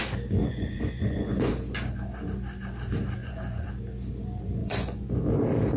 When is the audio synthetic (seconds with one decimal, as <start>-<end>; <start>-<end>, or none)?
0.4-1.5; 3.2-3.7; 4.6-5.2